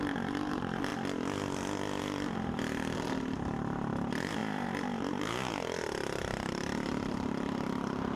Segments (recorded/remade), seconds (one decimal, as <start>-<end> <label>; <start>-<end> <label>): 0.0-0.9 remade; 0.9-2.0 recorded; 2.0-8.2 remade